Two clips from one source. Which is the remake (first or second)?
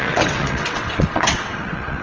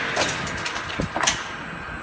first